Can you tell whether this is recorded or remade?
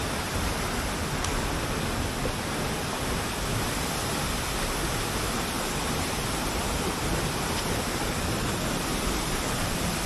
recorded